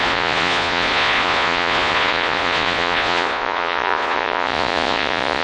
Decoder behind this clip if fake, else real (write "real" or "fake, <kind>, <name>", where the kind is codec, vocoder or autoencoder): fake, vocoder, Vocos